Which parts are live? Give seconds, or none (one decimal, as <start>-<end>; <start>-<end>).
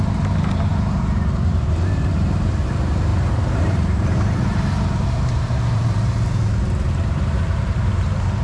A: none